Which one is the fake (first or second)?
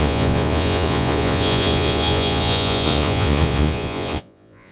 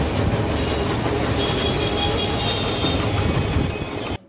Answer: first